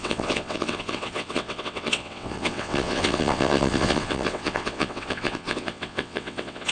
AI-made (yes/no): yes